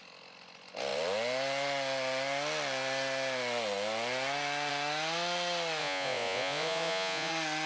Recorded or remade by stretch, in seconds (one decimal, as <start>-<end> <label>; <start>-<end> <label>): 0.0-5.8 recorded; 5.8-7.3 remade; 7.3-7.7 recorded